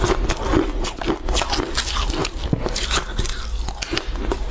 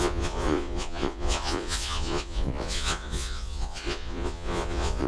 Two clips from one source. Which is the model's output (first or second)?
second